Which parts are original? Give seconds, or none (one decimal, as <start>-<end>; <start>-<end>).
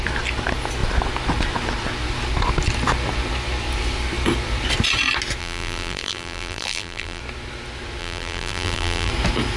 0.0-5.4; 7.2-8.0; 9.1-9.6